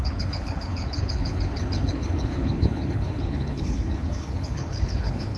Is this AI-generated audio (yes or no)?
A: yes